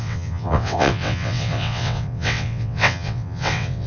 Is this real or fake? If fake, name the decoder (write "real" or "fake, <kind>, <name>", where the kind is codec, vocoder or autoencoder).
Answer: fake, vocoder, WaveNeXt